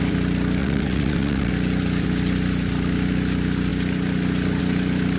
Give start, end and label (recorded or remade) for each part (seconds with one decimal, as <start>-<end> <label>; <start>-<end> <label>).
0.0-0.6 recorded; 0.6-1.5 remade; 1.5-5.2 recorded